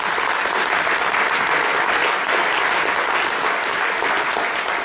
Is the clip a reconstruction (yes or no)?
no